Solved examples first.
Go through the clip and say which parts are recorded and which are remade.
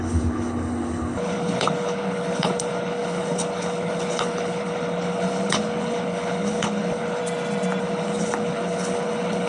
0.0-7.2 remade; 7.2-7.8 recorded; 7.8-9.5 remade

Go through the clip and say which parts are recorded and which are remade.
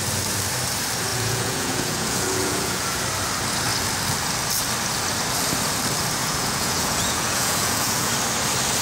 0.0-1.1 recorded; 1.1-3.0 remade; 3.0-6.2 recorded; 6.2-8.1 remade; 8.1-8.8 recorded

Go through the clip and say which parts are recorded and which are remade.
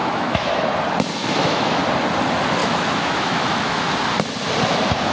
0.0-0.5 remade; 0.5-1.2 recorded; 1.2-1.8 remade; 1.8-2.6 recorded; 2.6-3.8 remade; 3.8-5.1 recorded